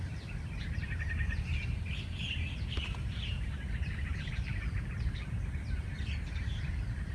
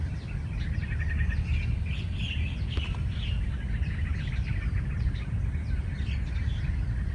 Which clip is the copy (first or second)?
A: first